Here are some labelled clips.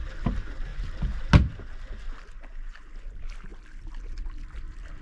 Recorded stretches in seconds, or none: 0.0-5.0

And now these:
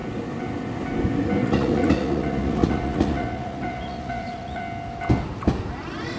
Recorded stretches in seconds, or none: 0.0-1.4; 4.6-6.2